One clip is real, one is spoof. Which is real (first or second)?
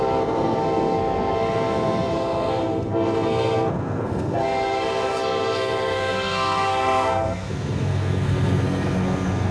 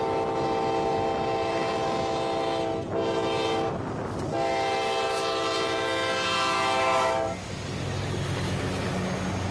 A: second